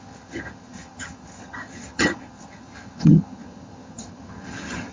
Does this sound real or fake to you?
fake